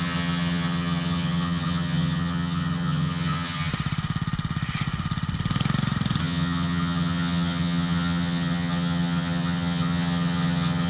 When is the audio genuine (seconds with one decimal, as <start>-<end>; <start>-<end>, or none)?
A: 3.7-6.2